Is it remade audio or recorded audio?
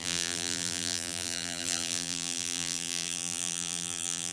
remade